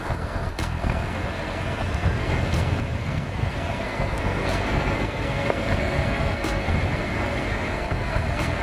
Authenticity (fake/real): fake